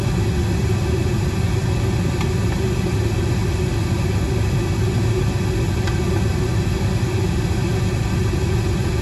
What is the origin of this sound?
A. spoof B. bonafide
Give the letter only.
B